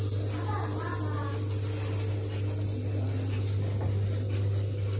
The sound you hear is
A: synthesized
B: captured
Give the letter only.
B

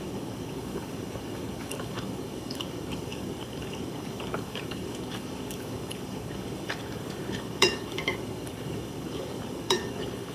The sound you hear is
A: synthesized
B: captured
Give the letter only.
A